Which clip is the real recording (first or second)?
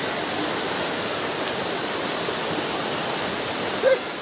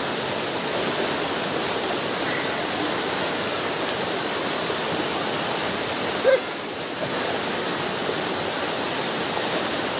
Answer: second